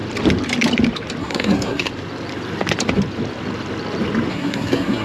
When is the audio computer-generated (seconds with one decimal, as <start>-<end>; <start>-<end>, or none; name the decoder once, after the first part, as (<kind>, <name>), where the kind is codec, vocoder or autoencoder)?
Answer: 1.2-1.9 (codec, SNAC); 4.3-5.0